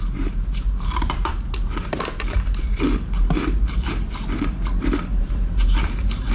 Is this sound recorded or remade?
remade